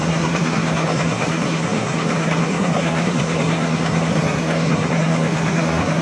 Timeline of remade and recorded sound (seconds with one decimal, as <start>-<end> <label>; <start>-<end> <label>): 0.0-6.0 remade

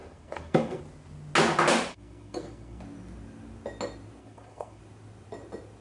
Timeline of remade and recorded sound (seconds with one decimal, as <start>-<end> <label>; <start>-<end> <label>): 0.0-0.8 remade; 0.8-1.9 recorded; 1.9-2.8 remade; 2.8-4.2 recorded; 4.2-4.8 remade; 4.8-5.8 recorded